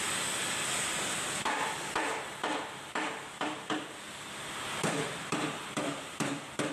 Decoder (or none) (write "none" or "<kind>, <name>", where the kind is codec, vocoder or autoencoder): vocoder, BigVGAN v2